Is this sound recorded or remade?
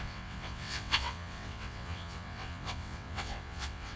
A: remade